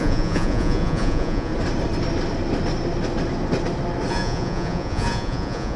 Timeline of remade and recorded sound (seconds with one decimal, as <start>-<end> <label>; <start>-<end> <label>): 0.0-1.5 remade; 1.5-4.1 recorded; 4.1-5.8 remade

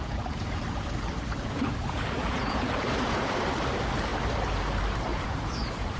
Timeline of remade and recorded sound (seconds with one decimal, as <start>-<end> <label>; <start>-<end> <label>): 0.0-0.6 remade; 0.6-1.8 recorded; 1.8-3.3 remade; 3.3-5.1 recorded; 5.1-6.0 remade

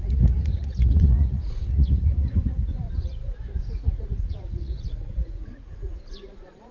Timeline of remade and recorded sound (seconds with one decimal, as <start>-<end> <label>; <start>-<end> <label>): 0.0-6.7 remade

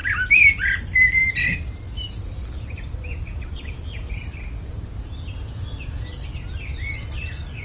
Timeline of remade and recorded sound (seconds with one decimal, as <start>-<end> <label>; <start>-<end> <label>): 0.0-7.6 recorded

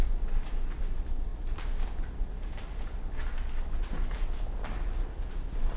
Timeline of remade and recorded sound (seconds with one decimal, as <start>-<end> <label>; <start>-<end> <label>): 0.0-5.8 recorded

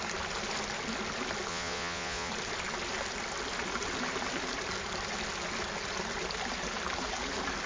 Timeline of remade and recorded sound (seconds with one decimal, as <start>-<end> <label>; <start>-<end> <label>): 0.0-1.5 recorded; 1.5-2.3 remade; 2.3-7.7 recorded

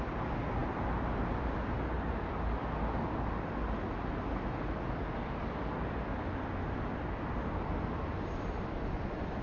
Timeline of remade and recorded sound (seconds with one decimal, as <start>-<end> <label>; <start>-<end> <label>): 0.0-9.4 recorded